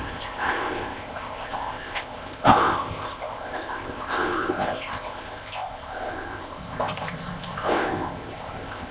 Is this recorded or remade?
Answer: remade